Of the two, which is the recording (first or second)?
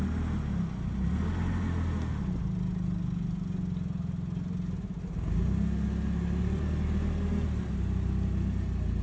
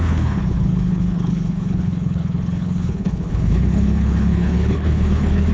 first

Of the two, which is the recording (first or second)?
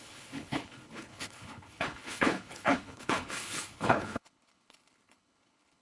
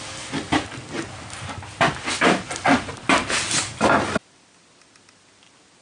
second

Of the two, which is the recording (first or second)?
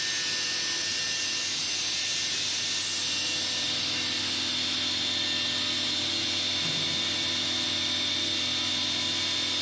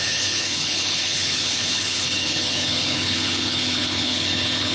first